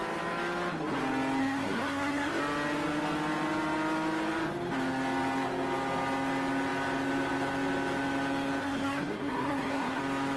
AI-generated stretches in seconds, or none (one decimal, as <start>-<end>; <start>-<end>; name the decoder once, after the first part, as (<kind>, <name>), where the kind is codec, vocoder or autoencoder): 1.4-2.4 (codec, SNAC); 8.6-10.0